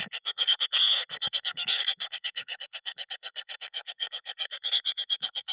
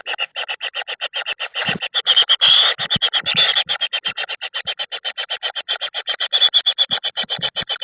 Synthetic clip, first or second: first